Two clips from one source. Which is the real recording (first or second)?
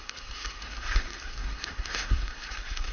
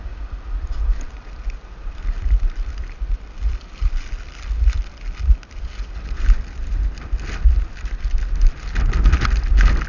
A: second